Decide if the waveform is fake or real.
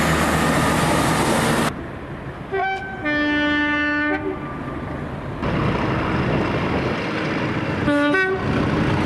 real